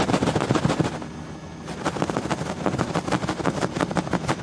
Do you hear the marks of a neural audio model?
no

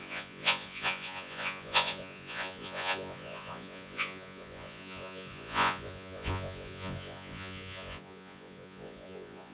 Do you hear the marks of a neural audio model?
yes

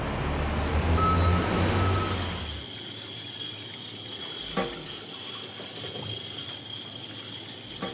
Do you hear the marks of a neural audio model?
no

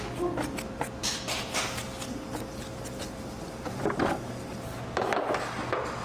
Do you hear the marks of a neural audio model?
no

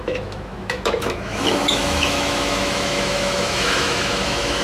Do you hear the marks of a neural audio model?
yes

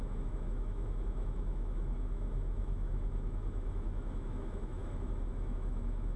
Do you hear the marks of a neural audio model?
yes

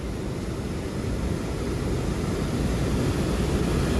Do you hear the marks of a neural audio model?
no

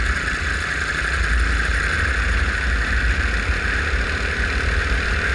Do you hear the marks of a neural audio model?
no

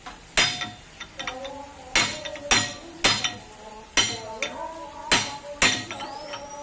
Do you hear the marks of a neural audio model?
no